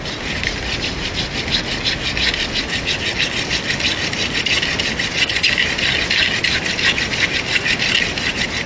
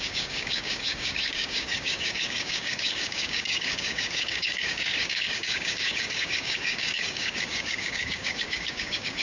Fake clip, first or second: second